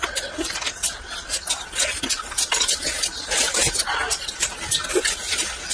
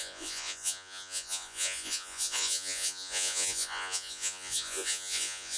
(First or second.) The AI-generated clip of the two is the second